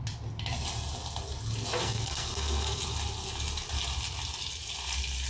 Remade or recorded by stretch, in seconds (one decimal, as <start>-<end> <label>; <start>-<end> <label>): 0.0-1.8 recorded; 1.8-2.8 remade; 2.8-5.3 recorded